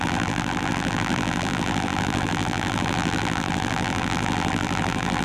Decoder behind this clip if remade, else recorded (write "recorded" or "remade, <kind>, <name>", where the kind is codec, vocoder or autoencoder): remade, vocoder, BigVGAN v2